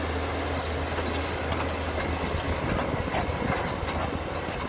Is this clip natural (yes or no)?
yes